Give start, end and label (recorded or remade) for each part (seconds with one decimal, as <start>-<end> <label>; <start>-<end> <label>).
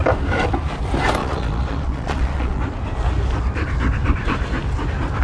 0.0-1.2 recorded; 1.2-2.6 remade; 2.6-5.2 recorded